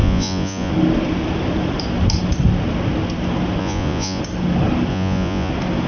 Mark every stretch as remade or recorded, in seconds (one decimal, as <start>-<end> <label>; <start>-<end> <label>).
0.0-0.7 remade; 0.7-3.6 recorded; 3.6-4.2 remade; 4.2-4.9 recorded; 4.9-5.5 remade; 5.5-5.9 recorded